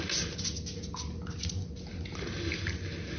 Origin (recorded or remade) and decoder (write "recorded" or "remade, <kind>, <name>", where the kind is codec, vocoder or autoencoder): recorded